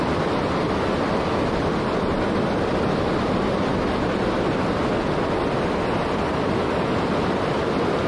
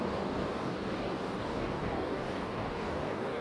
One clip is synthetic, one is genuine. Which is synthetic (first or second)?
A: second